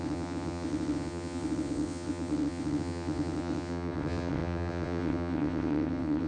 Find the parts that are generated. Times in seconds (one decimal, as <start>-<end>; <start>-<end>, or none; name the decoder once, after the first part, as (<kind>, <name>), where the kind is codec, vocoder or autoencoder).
0.0-6.3 (vocoder, WaveNeXt)